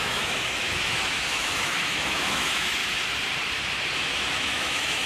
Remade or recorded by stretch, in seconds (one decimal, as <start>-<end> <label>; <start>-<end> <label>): 0.0-2.8 remade; 2.8-4.0 recorded; 4.0-5.1 remade